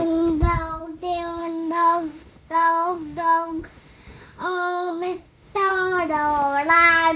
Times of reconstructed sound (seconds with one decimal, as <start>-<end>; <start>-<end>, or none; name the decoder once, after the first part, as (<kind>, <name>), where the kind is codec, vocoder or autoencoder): 1.4-5.7 (autoencoder, DAC-VAE)